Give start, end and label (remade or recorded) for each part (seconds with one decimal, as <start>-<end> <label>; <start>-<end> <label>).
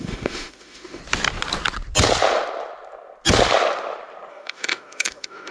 0.0-1.0 remade; 1.0-4.3 recorded; 4.3-5.5 remade